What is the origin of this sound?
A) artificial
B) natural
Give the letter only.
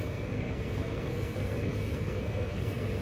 A